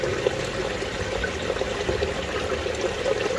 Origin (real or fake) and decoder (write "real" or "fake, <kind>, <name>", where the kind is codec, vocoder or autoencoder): real